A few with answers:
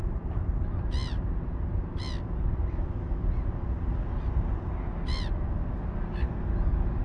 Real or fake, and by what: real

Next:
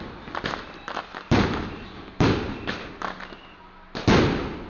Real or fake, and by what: real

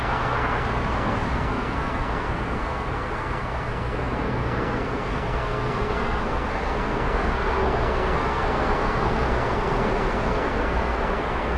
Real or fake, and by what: fake, codec, SNAC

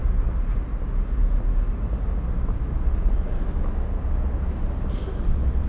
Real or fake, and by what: real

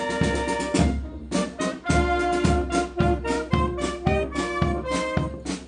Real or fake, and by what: real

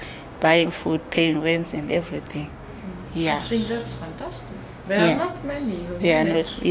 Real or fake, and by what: fake, codec, DAC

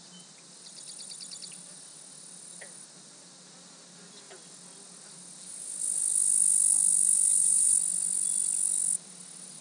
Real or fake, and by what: real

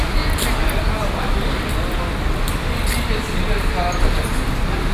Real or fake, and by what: real